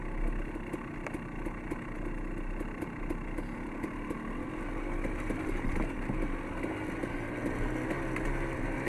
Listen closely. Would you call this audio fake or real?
real